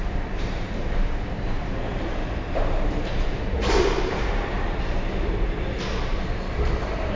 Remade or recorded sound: remade